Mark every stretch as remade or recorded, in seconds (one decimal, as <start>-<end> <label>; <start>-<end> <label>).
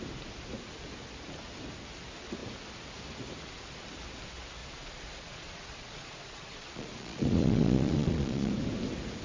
0.0-4.6 recorded; 4.6-8.5 remade; 8.5-9.2 recorded